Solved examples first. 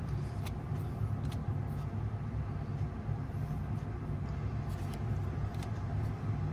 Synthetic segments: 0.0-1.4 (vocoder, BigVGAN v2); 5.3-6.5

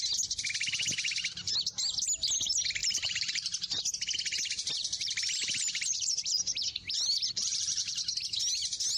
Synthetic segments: 2.8-3.8 (vocoder, BigVGAN v2); 4.8-8.0

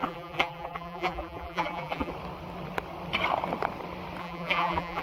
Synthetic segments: 0.0-2.1 (vocoder, BigVGAN v2); 4.2-5.0

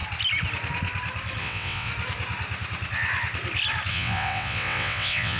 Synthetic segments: 1.4-1.9 (vocoder, WaveNeXt); 3.9-5.4

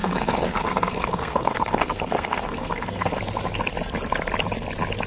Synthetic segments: 0.0-3.1 (codec, SNAC)

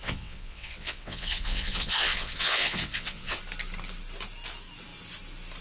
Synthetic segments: 0.0-3.4 (vocoder, WaveNeXt)

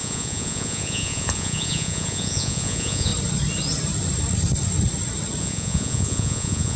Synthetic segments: 0.0-3.1 (vocoder, Vocos); 5.4-6.8